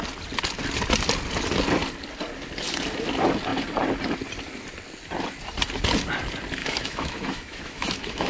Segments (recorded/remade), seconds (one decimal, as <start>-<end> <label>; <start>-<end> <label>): 0.0-6.6 recorded; 6.6-8.3 remade